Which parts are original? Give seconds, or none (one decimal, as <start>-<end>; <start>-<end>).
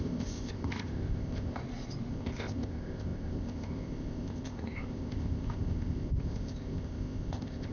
1.6-2.1